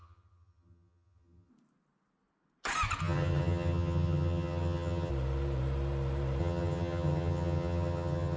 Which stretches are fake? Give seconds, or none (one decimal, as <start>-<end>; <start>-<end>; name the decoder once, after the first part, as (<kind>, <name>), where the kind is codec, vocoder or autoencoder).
0.0-1.5 (vocoder, HiFi-GAN); 3.0-5.1; 6.4-8.4